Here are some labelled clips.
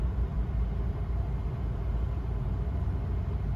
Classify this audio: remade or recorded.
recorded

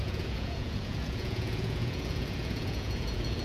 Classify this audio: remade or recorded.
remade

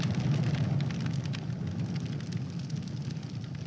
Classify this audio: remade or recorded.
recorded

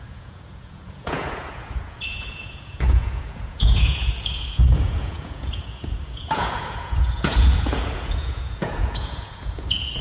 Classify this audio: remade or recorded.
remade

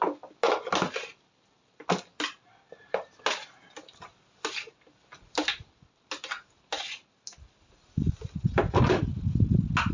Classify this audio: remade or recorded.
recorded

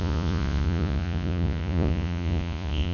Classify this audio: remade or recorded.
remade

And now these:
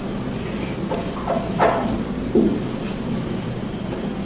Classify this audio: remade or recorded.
recorded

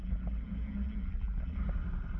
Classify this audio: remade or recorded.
recorded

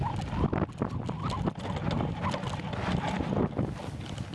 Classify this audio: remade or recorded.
recorded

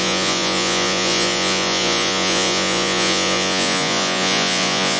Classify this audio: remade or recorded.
remade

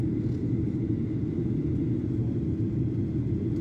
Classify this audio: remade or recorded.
recorded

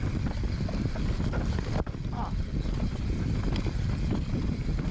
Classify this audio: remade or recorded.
recorded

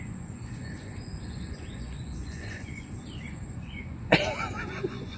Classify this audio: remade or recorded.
remade